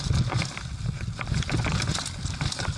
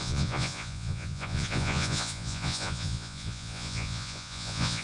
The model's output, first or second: second